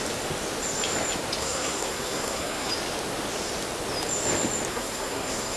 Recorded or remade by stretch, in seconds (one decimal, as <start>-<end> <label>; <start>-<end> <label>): 0.0-1.4 recorded; 1.4-2.7 remade; 2.7-4.7 recorded; 4.7-5.6 remade